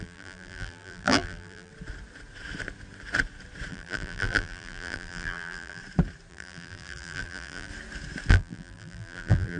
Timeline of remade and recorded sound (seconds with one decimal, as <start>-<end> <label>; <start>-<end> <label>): 0.0-1.7 remade; 1.7-3.7 recorded; 3.7-5.8 remade; 5.8-6.3 recorded; 6.3-7.7 remade; 7.7-8.3 recorded; 8.3-9.6 remade